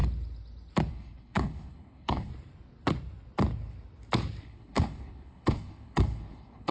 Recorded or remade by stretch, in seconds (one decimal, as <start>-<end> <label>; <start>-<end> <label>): 0.0-0.9 recorded; 0.9-2.3 remade; 2.3-4.4 recorded; 4.4-6.7 remade